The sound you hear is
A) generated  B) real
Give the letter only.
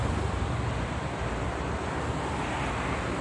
B